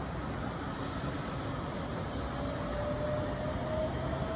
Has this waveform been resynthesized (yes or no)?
no